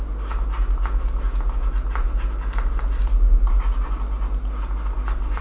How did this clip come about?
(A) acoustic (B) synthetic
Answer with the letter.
A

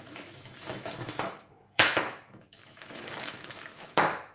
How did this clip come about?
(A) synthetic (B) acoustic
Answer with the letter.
A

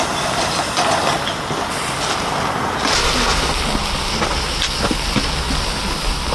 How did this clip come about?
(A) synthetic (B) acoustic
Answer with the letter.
B